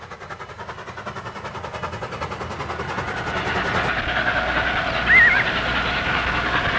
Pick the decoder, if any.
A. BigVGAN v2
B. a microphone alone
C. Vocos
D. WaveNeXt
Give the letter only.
B